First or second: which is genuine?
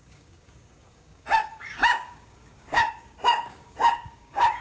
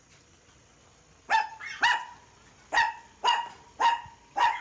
second